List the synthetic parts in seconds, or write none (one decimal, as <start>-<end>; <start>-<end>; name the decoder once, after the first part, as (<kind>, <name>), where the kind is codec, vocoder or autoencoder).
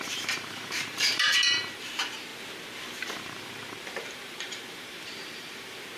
0.0-2.3 (vocoder, BigVGAN v2); 3.2-6.0